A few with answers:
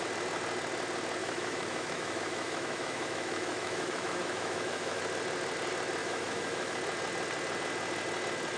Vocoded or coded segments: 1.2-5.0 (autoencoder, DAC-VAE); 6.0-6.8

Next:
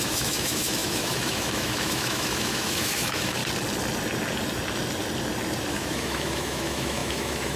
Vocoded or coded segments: 0.0-3.4 (autoencoder, DAC-VAE); 5.7-7.6

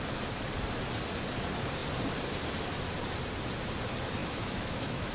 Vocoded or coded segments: 4.2-5.1 (autoencoder, DAC-VAE)

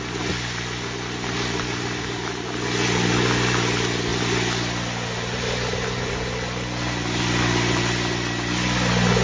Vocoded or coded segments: none